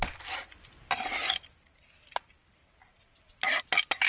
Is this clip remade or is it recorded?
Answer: recorded